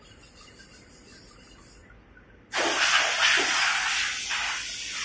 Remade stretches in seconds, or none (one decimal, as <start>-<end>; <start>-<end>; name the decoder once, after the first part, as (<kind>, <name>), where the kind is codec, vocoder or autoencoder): none

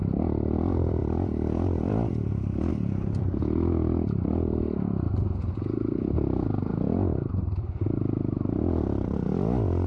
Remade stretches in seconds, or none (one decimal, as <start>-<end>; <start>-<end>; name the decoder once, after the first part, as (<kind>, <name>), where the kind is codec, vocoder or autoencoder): 0.0-6.7 (vocoder, BigVGAN v2)

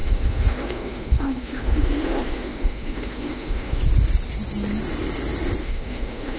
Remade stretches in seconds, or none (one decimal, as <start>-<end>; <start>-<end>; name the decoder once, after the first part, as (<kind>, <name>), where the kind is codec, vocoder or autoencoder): 0.0-3.8 (autoencoder, DAC-VAE); 5.6-6.4

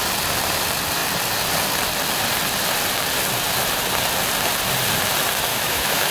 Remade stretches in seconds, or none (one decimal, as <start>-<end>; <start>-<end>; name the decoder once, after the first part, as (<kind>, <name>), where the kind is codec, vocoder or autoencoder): 5.5-6.1 (autoencoder, DAC-VAE)

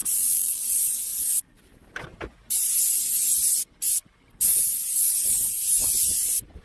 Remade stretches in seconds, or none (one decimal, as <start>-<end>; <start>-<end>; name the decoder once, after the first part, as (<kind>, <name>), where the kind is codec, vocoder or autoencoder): 0.0-0.6 (vocoder, BigVGAN v2)

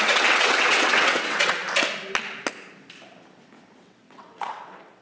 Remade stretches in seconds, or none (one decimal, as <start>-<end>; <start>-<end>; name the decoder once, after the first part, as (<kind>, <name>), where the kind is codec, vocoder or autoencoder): 0.0-1.6 (vocoder, WaveNeXt); 3.8-5.0

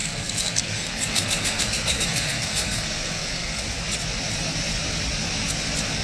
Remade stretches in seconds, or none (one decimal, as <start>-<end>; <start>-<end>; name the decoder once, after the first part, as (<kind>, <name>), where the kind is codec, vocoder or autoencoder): 0.0-3.6 (codec, SNAC)

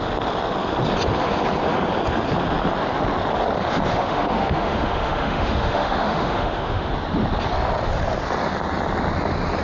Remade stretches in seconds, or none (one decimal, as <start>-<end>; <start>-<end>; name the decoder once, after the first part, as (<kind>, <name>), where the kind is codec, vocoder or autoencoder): 3.9-6.9 (autoencoder, DAC-VAE)